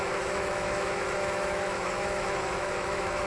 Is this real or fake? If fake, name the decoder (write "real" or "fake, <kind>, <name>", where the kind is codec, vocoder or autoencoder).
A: fake, autoencoder, DAC-VAE